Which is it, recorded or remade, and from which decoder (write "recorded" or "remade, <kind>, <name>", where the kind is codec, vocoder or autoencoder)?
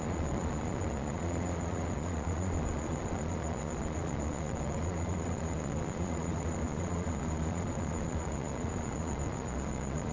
remade, vocoder, Vocos